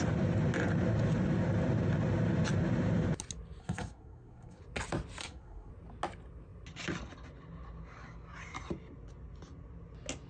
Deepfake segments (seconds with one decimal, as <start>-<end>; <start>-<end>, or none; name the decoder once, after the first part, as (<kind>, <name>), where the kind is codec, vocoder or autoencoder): 3.6-4.6 (codec, SNAC); 5.2-5.7